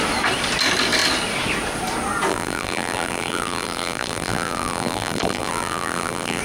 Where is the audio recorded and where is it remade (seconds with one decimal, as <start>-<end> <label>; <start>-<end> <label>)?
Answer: 0.0-2.3 recorded; 2.3-6.4 remade